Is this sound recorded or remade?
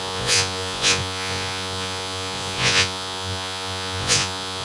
remade